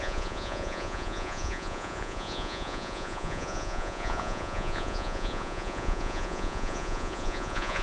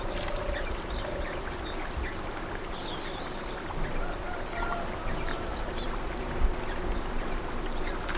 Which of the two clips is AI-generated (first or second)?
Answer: first